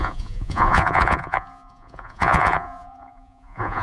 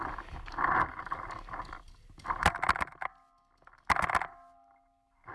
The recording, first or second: second